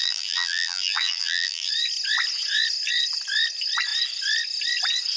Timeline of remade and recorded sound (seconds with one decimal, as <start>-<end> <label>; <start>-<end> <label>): 0.0-1.7 remade; 1.7-5.2 recorded